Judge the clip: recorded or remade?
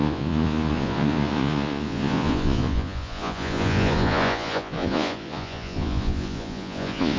remade